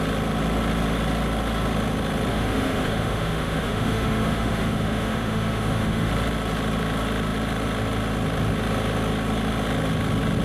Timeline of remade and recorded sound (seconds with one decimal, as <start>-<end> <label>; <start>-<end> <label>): 0.0-2.3 recorded; 2.3-6.1 remade; 6.1-10.4 recorded